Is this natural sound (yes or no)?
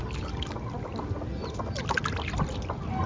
yes